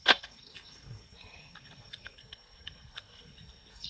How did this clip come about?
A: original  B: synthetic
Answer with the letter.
B